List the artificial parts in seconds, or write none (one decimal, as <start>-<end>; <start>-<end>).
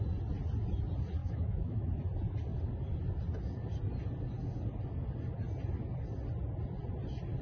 1.2-1.9